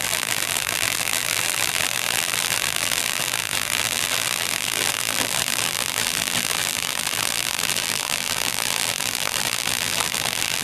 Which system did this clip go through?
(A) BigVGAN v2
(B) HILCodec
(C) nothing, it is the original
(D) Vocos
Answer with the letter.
A